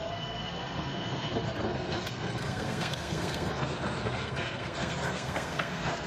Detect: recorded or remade remade